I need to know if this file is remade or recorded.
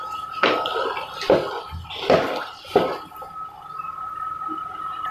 recorded